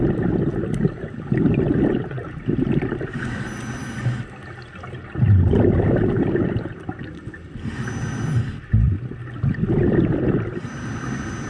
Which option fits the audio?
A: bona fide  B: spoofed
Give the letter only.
A